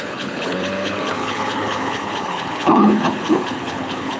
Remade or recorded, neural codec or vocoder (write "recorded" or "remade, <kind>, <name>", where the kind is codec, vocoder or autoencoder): remade, codec, HILCodec